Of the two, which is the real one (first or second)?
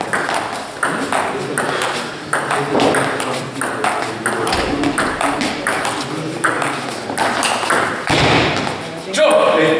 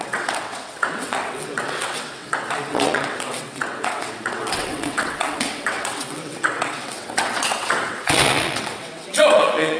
first